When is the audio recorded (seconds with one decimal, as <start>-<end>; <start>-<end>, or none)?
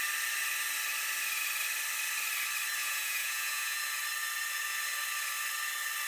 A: 0.0-2.8; 3.8-6.1